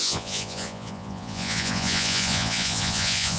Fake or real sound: fake